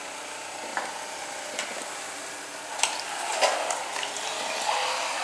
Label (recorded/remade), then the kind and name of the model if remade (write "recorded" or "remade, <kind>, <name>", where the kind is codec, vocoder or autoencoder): recorded